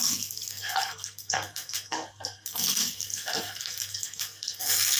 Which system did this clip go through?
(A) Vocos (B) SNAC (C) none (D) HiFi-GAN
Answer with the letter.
B